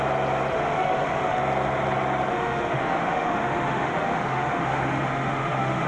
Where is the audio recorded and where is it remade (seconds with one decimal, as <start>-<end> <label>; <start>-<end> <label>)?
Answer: 0.0-0.5 recorded; 0.5-1.4 remade; 1.4-2.3 recorded; 2.3-5.9 remade

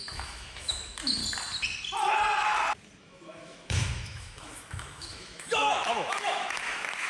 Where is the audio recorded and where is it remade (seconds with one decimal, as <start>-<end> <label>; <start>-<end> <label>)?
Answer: 0.0-1.2 remade; 1.2-3.0 recorded; 3.0-7.1 remade

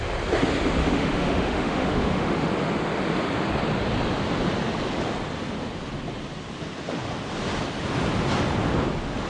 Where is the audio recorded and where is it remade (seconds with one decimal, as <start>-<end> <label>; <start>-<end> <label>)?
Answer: 0.0-0.8 recorded; 0.8-2.5 remade; 2.5-9.3 recorded

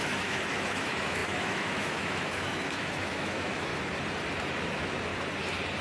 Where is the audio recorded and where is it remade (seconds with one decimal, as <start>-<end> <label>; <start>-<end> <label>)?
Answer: 0.0-3.7 remade; 3.7-4.5 recorded; 4.5-5.1 remade; 5.1-5.8 recorded

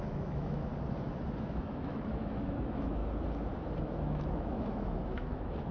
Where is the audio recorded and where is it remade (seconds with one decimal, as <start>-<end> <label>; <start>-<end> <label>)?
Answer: 0.0-0.7 remade; 0.7-1.4 recorded; 1.4-3.0 remade; 3.0-3.8 recorded; 3.8-5.7 remade

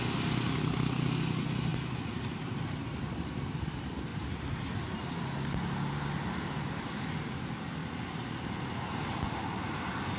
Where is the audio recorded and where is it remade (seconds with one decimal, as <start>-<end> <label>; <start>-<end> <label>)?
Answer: 0.0-10.2 recorded